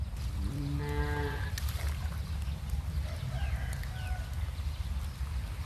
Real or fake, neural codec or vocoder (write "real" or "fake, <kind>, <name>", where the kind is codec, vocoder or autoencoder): real